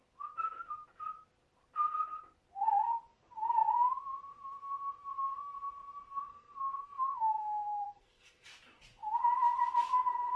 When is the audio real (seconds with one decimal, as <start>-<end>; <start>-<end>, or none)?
0.0-6.1; 8.5-10.4

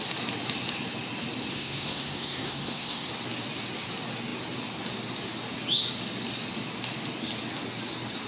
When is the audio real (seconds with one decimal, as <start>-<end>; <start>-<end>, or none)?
0.0-1.5; 3.1-8.3

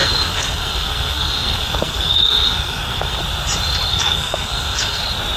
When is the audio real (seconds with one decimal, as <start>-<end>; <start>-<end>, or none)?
3.2-3.9; 5.0-5.4

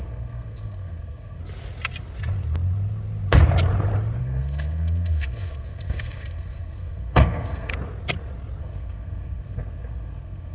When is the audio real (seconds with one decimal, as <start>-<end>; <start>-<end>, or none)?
1.4-4.2; 7.7-8.6

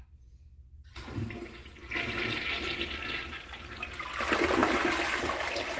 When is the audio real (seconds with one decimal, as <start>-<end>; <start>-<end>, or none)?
0.0-5.8

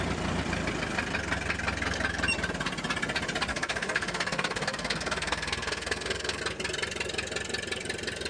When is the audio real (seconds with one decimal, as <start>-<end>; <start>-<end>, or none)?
0.0-3.5; 6.4-8.3

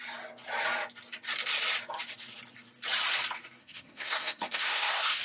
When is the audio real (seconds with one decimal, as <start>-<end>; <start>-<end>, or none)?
0.0-3.6

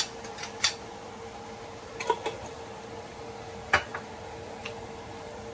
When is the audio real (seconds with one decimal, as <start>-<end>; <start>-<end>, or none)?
0.0-5.5